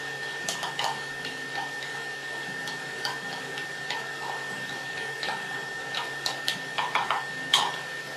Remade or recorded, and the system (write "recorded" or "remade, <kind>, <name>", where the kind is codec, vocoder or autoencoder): remade, codec, DAC